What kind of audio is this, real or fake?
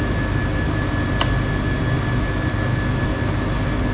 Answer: real